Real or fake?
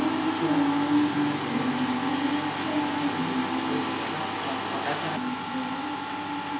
real